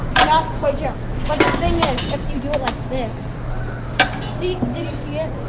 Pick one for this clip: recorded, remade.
recorded